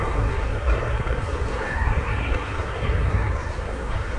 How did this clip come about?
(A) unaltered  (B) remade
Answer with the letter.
B